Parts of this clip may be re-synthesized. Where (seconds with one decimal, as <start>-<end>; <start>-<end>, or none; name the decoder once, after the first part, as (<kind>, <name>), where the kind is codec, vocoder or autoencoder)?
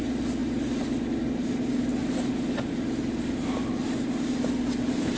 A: none